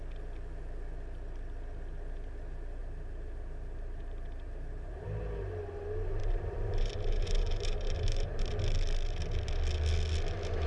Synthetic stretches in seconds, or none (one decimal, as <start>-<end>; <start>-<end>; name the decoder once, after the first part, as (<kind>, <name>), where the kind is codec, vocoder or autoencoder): 2.8-5.2 (vocoder, BigVGAN v2); 6.2-8.4